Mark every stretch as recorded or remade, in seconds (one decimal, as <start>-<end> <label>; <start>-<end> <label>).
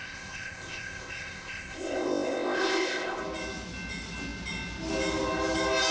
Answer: 0.0-3.2 remade; 3.2-5.9 recorded